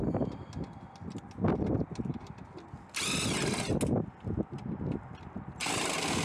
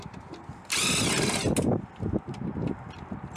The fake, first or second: second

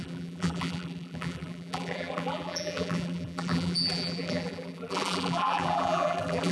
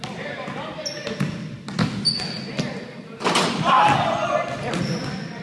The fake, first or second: first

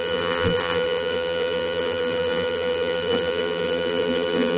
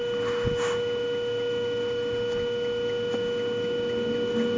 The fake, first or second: first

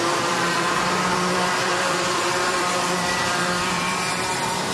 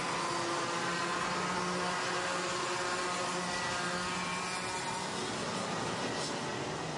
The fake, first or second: first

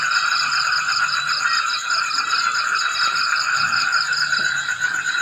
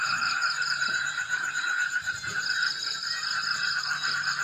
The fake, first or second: second